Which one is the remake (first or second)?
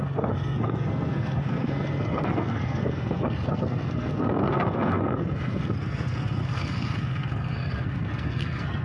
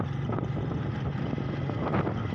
first